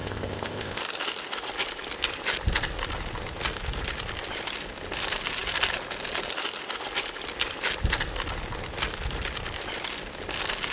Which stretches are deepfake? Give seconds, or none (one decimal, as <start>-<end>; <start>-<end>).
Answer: 0.0-0.8